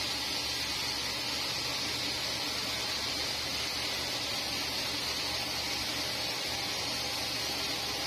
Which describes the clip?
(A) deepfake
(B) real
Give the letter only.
B